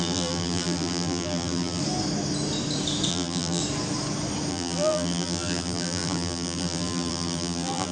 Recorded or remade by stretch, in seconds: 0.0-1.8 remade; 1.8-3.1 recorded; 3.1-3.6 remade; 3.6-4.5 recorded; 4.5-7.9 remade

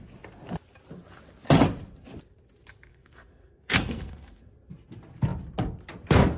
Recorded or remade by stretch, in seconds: 0.0-2.9 recorded; 2.9-4.5 remade; 4.5-6.4 recorded

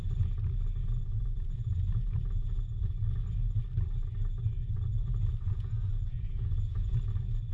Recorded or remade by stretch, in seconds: 0.0-0.8 recorded; 0.8-3.6 remade; 3.6-4.9 recorded; 4.9-7.0 remade; 7.0-7.5 recorded

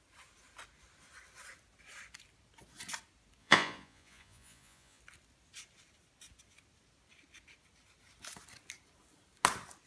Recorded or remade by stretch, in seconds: 0.0-3.4 recorded; 3.4-5.0 remade; 5.0-9.9 recorded

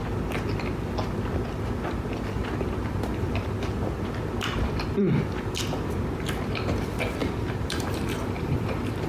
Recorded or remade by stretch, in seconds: 0.0-7.2 recorded; 7.2-8.6 remade; 8.6-9.1 recorded